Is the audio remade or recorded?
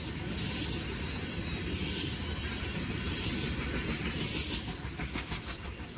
remade